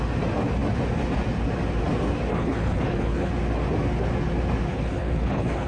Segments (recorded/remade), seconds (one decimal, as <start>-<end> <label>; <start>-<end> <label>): 0.0-2.3 recorded; 2.3-3.3 remade; 3.3-4.7 recorded; 4.7-5.7 remade